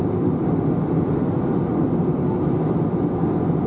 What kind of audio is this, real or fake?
real